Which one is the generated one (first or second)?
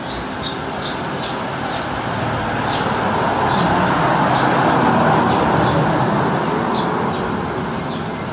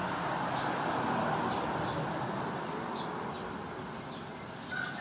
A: second